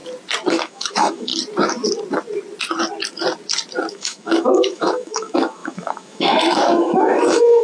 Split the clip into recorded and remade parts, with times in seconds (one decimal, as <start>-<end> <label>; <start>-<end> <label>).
0.0-0.5 recorded; 0.5-1.3 remade; 1.3-3.9 recorded; 3.9-7.6 remade